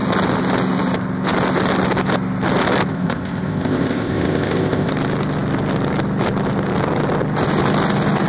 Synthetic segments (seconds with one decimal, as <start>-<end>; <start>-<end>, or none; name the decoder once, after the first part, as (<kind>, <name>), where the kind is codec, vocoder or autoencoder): 2.9-4.9 (codec, ZipCodec)